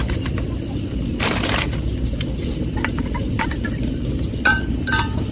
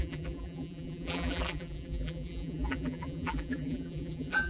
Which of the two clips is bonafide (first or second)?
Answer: first